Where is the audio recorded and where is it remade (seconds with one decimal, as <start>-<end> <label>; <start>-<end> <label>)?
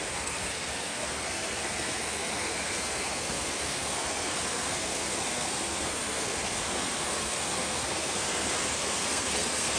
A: 0.0-9.8 remade